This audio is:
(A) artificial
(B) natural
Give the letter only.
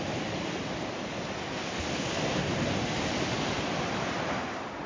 B